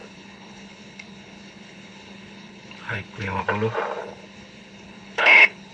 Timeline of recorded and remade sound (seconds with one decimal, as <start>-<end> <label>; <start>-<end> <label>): 0.0-3.4 remade; 3.4-4.0 recorded; 4.0-5.7 remade